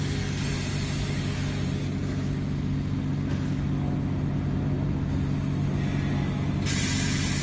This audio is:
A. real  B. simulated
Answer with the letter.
A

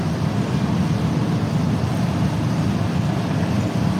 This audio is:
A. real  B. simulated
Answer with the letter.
A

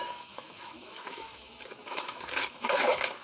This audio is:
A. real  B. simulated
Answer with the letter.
B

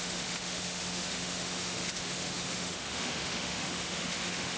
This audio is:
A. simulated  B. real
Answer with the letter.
A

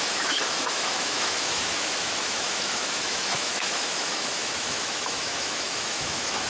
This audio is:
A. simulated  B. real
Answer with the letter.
A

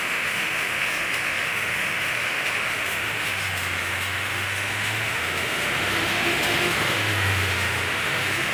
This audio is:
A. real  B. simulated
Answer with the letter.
B